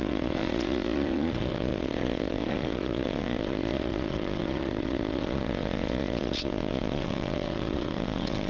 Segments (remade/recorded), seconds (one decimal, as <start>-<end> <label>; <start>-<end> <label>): 0.0-8.5 remade